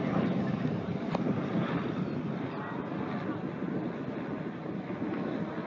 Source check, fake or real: fake